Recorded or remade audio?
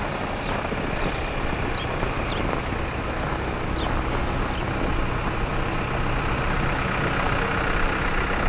recorded